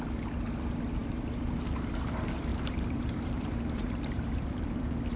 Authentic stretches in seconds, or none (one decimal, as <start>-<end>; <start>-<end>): 0.0-2.5; 4.8-5.2

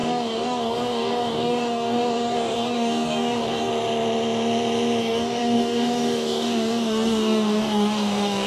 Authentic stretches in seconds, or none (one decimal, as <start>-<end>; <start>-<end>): 3.7-5.0